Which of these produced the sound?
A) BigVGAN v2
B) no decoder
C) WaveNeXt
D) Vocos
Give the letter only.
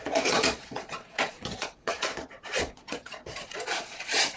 D